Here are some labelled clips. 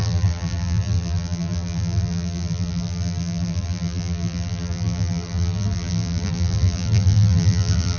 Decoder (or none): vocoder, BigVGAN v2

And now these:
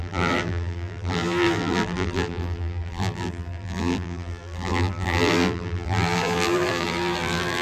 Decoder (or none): vocoder, BigVGAN v2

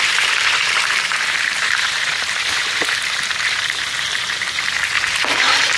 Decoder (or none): vocoder, BigVGAN v2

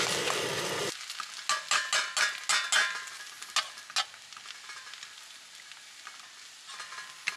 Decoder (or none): none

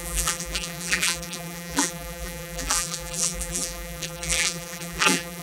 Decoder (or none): vocoder, BigVGAN v2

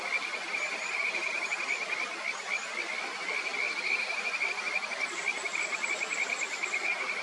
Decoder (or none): none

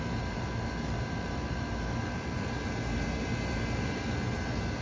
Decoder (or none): vocoder, BigVGAN v2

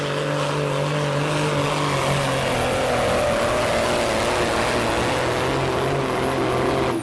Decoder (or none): none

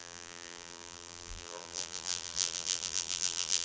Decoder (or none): vocoder, BigVGAN v2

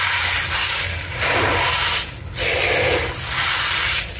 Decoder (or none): vocoder, BigVGAN v2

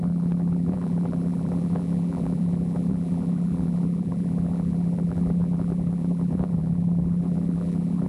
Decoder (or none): vocoder, BigVGAN v2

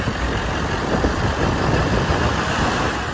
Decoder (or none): vocoder, BigVGAN v2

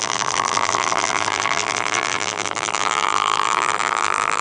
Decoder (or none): vocoder, BigVGAN v2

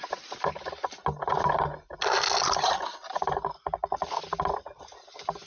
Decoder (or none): none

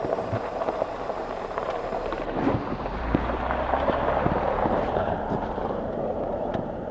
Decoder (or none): vocoder, BigVGAN v2